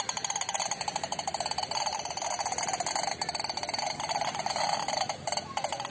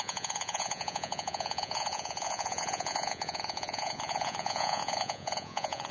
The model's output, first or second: second